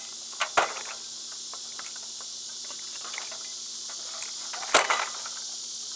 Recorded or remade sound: recorded